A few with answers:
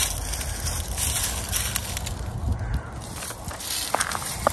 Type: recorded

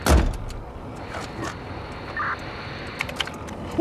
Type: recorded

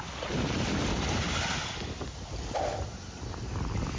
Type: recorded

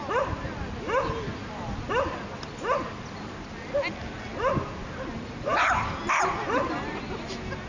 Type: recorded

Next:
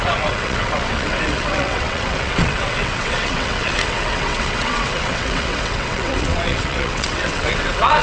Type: remade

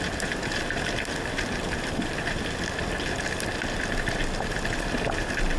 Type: recorded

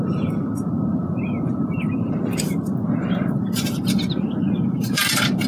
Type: remade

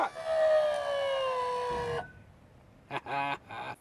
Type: recorded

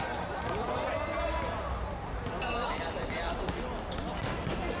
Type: recorded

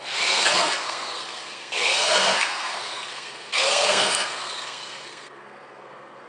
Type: remade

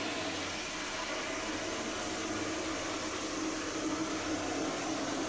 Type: recorded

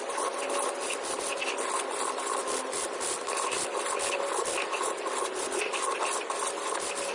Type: recorded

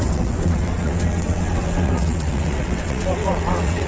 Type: remade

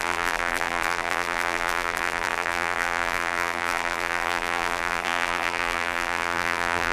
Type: remade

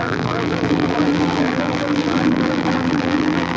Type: remade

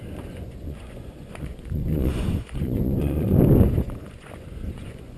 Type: remade